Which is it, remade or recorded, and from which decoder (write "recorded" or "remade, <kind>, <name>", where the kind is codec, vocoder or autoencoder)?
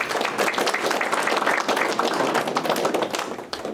recorded